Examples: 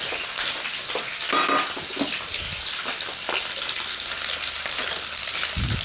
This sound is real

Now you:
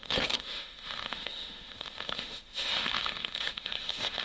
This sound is fake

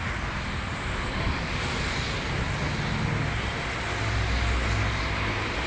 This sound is real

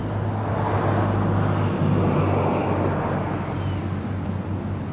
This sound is real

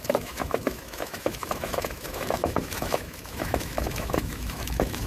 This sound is fake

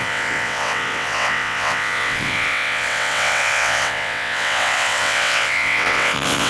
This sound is fake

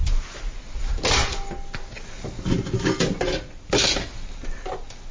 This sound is real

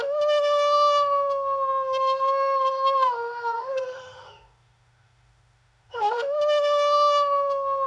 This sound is fake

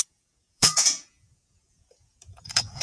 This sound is fake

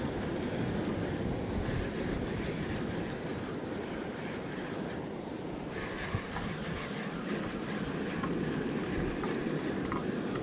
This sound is real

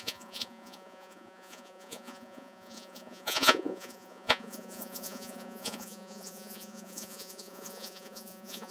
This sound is fake